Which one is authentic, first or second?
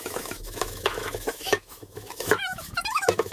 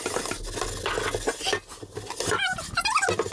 second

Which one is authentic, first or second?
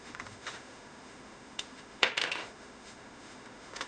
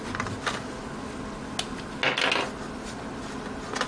second